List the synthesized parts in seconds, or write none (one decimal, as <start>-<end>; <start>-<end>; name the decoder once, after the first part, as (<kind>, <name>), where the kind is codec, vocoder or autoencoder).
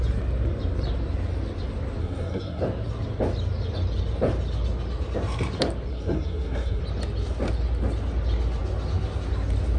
2.0-2.6 (codec, SNAC); 5.9-6.8